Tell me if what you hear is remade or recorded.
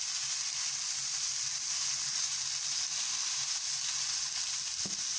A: recorded